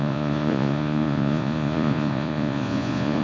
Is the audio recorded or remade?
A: remade